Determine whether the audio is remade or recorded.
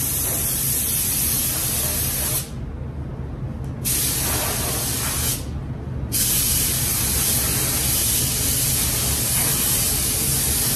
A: recorded